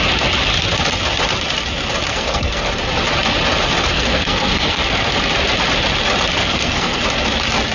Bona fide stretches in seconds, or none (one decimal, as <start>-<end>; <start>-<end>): 0.0-2.1; 2.7-3.9; 5.1-6.4; 7.0-7.7